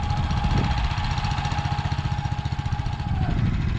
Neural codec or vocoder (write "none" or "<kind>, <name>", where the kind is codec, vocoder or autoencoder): none